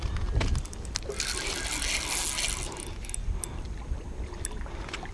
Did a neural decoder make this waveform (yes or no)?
no